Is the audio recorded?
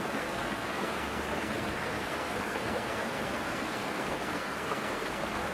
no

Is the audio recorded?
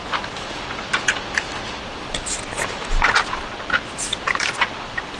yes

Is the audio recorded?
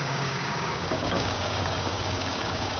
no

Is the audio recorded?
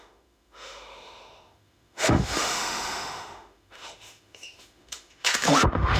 no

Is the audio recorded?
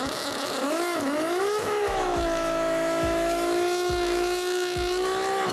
no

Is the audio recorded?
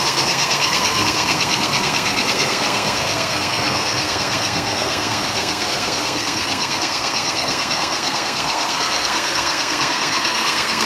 no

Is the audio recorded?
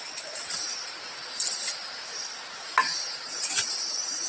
yes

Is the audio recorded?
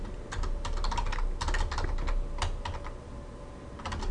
yes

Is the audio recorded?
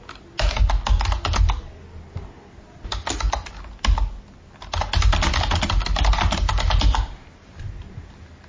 yes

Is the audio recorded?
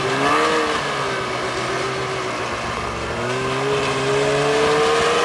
yes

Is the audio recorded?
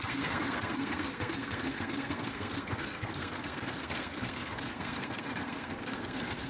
no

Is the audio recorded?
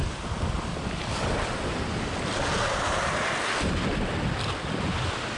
yes